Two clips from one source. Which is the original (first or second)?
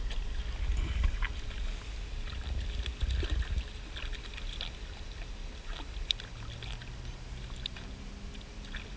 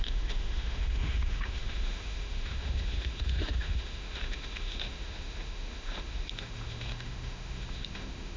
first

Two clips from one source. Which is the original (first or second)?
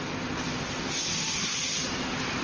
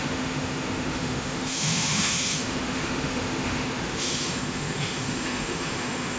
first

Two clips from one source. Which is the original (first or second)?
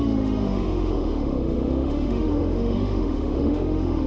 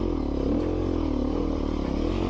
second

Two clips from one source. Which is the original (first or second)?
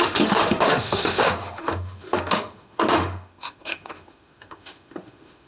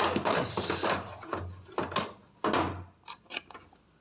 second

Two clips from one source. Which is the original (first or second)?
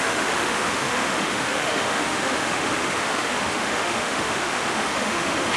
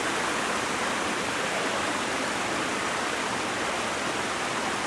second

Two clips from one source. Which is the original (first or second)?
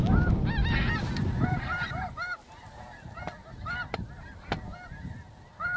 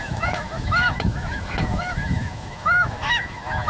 first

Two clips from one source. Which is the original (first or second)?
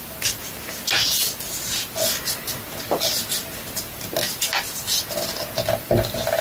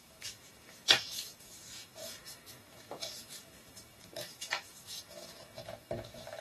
first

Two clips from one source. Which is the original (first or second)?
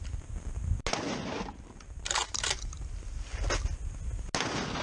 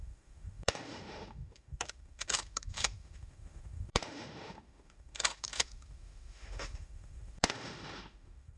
first